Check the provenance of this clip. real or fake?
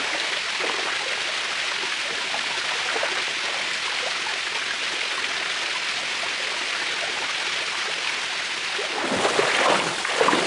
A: real